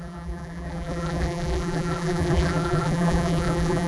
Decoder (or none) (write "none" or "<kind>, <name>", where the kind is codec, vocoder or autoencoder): vocoder, BigVGAN v2